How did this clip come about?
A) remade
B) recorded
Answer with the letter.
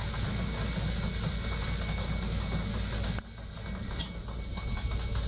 B